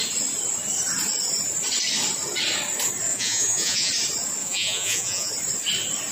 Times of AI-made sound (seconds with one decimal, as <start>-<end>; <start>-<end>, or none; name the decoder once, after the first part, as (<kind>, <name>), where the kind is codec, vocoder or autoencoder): 3.1-3.9 (vocoder, Vocos); 4.4-5.3